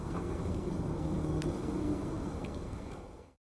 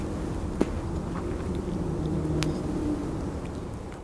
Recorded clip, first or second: second